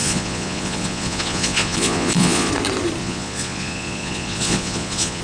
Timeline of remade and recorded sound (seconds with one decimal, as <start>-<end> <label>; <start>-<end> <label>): 0.0-2.5 remade; 2.5-3.0 recorded; 3.0-5.2 remade